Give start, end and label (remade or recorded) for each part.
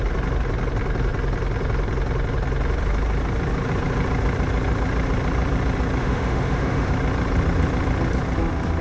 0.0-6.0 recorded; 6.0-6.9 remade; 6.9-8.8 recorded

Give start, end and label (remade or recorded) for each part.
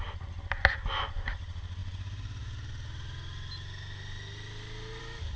0.0-5.4 recorded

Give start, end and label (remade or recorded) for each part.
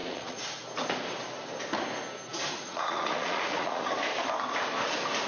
0.0-0.6 remade; 0.6-2.3 recorded; 2.3-3.9 remade; 3.9-5.3 recorded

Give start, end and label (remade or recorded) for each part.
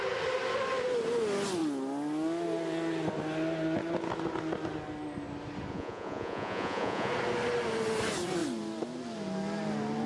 0.0-5.7 recorded; 5.7-7.1 remade; 7.1-10.1 recorded